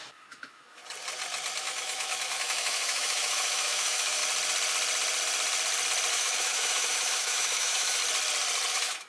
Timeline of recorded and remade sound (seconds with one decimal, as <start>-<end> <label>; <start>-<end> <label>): 0.0-0.8 remade; 0.8-1.6 recorded; 1.6-4.2 remade; 4.2-6.1 recorded; 6.1-8.0 remade; 8.0-8.7 recorded; 8.7-9.1 remade